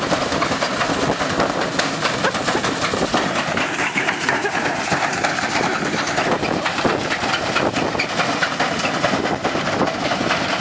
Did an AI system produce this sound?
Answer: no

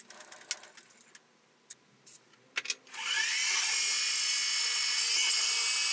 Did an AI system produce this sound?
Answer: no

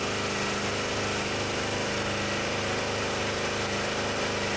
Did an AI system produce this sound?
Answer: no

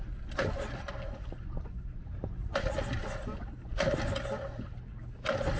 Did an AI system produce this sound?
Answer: no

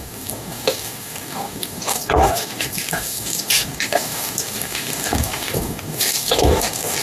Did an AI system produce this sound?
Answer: yes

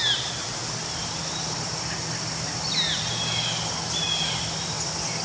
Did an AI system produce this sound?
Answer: no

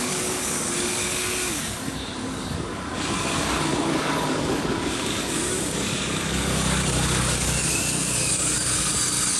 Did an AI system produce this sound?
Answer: yes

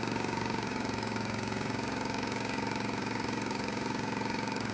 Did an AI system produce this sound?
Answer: yes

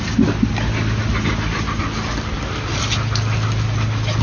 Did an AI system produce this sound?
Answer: no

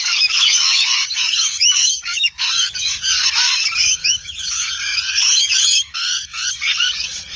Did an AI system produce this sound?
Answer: yes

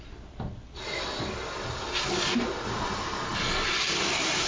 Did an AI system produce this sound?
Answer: no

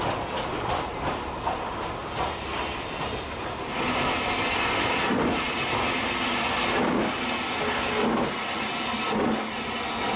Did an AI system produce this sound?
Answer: no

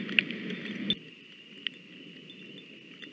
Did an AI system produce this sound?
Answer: no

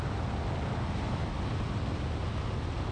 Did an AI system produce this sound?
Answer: no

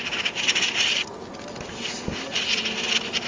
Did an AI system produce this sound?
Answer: no